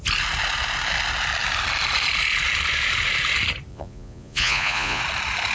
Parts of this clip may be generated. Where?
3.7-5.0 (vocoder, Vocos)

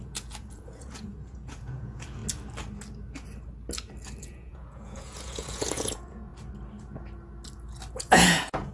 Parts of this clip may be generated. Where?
0.0-2.2 (vocoder, Vocos); 4.2-6.3; 7.9-8.7

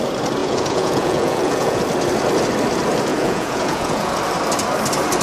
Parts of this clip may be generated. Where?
0.4-1.8 (vocoder, Vocos); 3.1-4.2

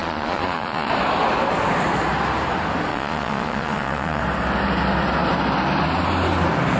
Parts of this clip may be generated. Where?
0.0-0.9 (vocoder, Vocos); 2.9-4.2

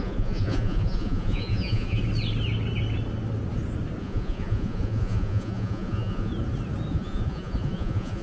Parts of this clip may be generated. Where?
0.0-2.0 (vocoder, Vocos); 4.0-6.3; 6.9-8.2

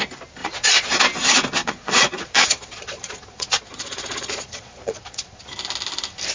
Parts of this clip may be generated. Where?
0.4-1.0 (vocoder, Vocos); 1.6-5.4